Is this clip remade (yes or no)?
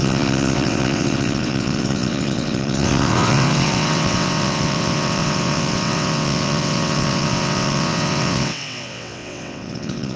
yes